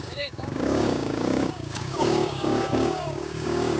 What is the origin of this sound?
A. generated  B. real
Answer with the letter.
A